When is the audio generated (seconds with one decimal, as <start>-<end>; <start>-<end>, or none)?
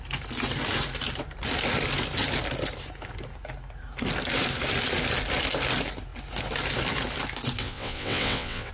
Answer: 7.6-8.7